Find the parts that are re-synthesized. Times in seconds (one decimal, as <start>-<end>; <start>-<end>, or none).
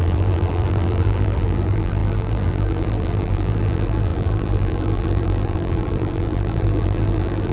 0.0-7.5